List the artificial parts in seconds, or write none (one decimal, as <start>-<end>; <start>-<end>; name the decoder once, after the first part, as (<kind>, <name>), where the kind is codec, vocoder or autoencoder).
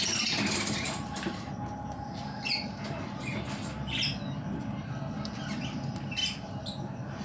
none